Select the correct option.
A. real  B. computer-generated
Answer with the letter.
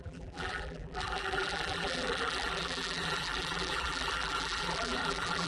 B